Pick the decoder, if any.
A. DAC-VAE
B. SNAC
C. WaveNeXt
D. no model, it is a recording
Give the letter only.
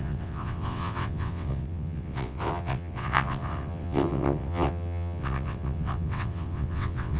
C